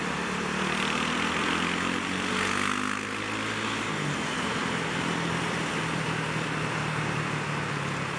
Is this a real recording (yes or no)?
yes